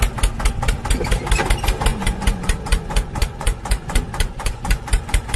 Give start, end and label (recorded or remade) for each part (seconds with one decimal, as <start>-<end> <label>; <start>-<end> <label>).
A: 0.0-1.9 recorded; 1.9-5.4 remade